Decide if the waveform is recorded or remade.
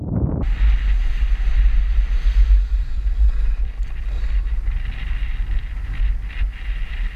recorded